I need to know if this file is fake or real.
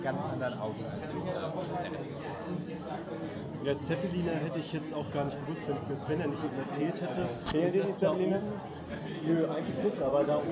real